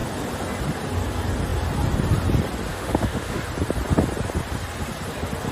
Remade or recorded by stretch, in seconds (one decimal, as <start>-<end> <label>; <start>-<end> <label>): 0.0-2.7 recorded; 2.7-3.4 remade; 3.4-5.5 recorded